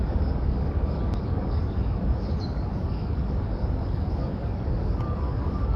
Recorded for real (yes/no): no